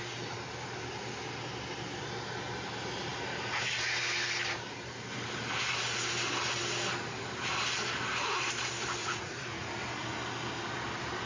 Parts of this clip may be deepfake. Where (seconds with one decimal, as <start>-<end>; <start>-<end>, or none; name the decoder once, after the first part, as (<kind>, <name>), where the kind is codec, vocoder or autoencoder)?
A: 9.0-9.7 (vocoder, Vocos)